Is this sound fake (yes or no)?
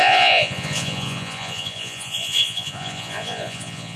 yes